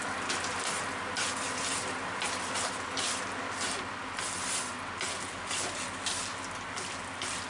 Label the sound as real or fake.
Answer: real